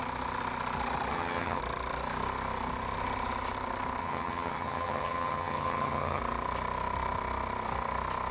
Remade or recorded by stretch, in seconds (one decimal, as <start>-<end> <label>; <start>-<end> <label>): 0.0-1.1 recorded; 1.1-1.6 remade; 1.6-4.0 recorded; 4.0-6.2 remade; 6.2-8.3 recorded